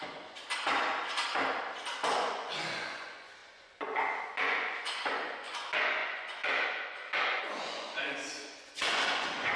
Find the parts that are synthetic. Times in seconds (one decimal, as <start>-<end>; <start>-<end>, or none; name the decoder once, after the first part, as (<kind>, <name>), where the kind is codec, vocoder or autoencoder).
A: 0.0-0.4 (vocoder, Vocos); 2.1-9.6

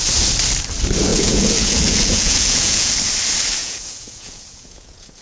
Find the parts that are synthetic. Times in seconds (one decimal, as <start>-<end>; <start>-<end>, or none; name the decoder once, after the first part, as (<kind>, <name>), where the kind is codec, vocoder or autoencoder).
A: 1.1-2.9 (vocoder, Vocos); 3.6-5.2

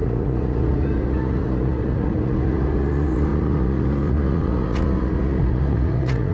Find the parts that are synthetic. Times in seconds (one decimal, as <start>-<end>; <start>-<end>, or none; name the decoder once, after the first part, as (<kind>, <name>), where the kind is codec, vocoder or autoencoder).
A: 0.0-6.3 (vocoder, Vocos)

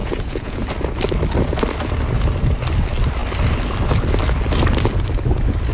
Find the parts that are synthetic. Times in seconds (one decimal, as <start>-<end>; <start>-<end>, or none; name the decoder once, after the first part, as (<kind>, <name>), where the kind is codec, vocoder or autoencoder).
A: 0.0-0.6 (vocoder, Vocos)